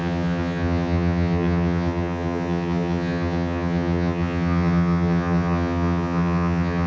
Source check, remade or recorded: remade